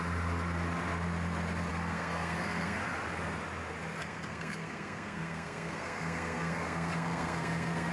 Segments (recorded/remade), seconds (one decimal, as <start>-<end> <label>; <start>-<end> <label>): 0.0-1.7 recorded; 1.7-2.8 remade; 2.8-4.0 recorded; 4.0-7.9 remade